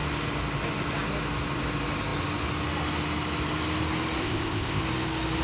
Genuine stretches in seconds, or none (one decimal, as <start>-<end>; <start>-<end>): 0.0-4.2; 4.8-5.4